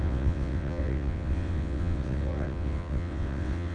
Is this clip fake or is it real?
fake